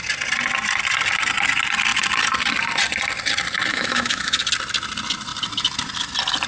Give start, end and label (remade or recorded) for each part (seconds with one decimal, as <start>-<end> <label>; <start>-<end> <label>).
0.0-3.7 recorded; 3.7-4.4 remade; 4.4-6.5 recorded